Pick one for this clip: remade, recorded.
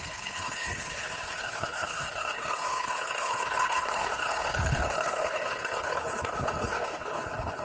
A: remade